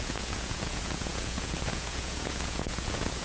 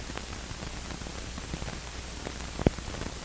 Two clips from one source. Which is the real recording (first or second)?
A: second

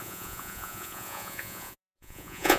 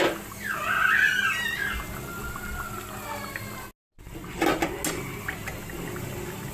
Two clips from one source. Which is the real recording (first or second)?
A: second